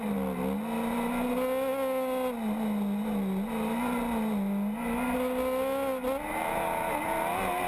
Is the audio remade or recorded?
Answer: recorded